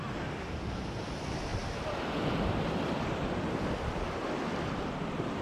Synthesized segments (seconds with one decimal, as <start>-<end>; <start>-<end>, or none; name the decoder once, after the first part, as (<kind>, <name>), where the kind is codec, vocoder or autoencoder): none